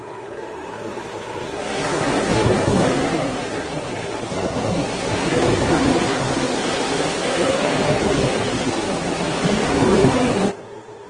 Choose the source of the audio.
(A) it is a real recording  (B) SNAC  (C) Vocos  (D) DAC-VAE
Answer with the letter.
B